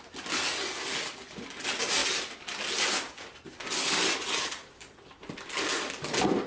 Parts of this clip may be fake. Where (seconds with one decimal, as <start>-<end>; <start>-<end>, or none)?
none